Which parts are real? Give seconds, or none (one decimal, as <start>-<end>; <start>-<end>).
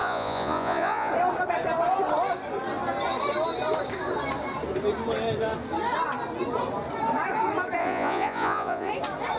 1.1-7.8; 8.9-9.4